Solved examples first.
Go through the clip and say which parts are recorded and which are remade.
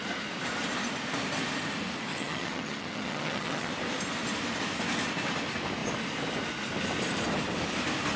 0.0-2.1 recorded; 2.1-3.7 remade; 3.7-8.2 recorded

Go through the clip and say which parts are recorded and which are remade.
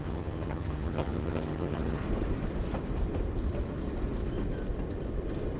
0.0-2.0 remade; 2.0-5.6 recorded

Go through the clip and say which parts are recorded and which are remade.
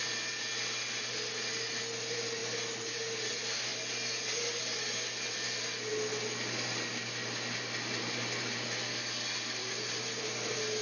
0.0-10.8 recorded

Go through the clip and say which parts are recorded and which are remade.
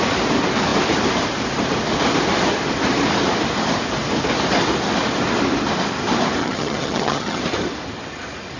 0.0-6.4 recorded; 6.4-7.4 remade; 7.4-8.6 recorded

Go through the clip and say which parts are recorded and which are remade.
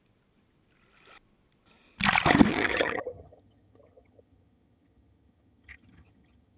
0.0-2.5 recorded; 2.5-6.6 remade